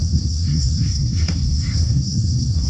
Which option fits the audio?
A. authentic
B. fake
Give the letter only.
B